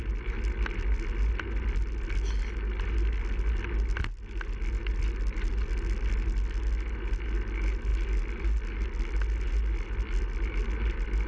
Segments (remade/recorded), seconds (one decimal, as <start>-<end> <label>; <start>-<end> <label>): 0.0-11.3 recorded